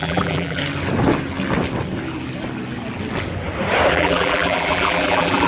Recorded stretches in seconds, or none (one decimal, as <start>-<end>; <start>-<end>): 0.6-3.9